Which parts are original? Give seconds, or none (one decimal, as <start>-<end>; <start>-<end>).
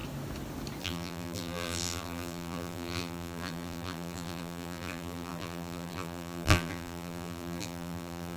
0.0-0.8